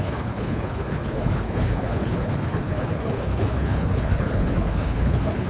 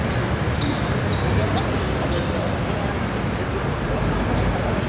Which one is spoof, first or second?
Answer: first